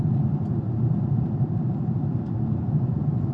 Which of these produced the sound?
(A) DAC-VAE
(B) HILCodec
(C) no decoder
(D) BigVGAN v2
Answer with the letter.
D